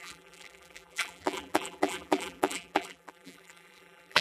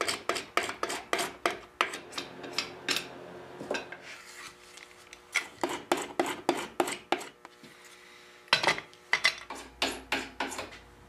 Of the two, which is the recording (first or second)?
second